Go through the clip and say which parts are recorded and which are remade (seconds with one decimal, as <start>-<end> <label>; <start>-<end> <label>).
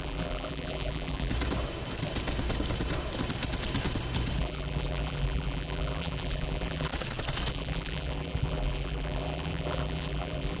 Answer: 0.0-1.3 remade; 1.3-4.4 recorded; 4.4-6.9 remade; 6.9-7.5 recorded; 7.5-10.6 remade